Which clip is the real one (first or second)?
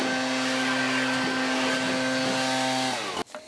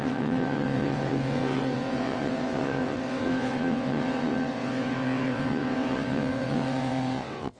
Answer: first